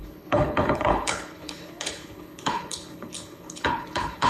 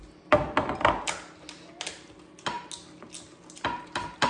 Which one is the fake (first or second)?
first